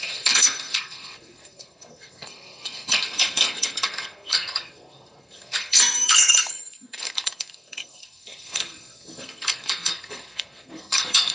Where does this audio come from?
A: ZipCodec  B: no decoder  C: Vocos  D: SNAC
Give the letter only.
D